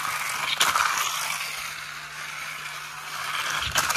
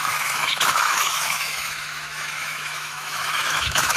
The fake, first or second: second